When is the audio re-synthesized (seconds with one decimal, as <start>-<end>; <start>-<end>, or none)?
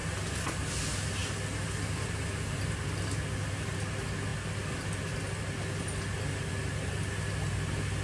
none